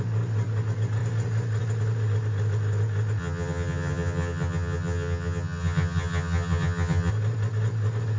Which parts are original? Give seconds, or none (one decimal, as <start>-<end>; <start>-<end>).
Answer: 0.0-3.2; 7.1-8.2